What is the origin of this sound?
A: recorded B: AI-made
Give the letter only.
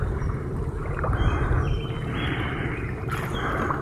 B